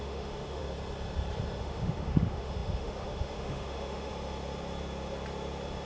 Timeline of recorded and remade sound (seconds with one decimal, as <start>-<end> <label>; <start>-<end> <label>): 0.0-0.6 remade; 0.6-1.6 recorded; 1.6-4.1 remade; 4.1-5.9 recorded